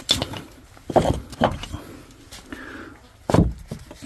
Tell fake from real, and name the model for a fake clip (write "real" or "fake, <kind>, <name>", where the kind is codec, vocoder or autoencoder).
real